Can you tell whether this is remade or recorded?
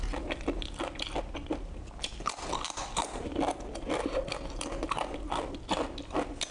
recorded